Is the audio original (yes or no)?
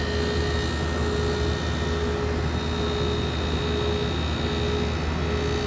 yes